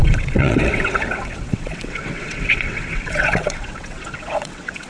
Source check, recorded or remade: remade